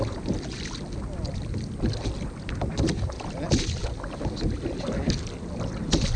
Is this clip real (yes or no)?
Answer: yes